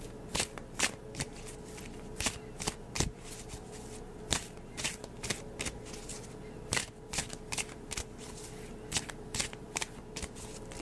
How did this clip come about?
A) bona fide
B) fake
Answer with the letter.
A